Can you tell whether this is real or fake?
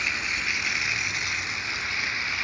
real